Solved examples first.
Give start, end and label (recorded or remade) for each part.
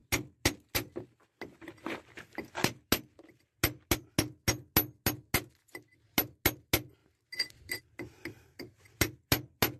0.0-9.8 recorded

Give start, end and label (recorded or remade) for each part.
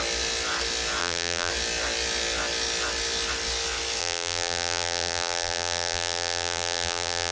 0.0-1.0 recorded; 1.0-1.5 remade; 1.5-4.0 recorded; 4.0-7.3 remade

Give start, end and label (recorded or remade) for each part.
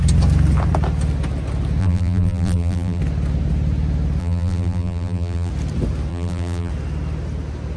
0.0-1.8 recorded; 1.8-3.0 remade; 3.0-4.2 recorded; 4.2-5.5 remade; 5.5-6.1 recorded; 6.1-6.7 remade; 6.7-7.8 recorded